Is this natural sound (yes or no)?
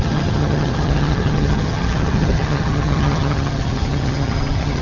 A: no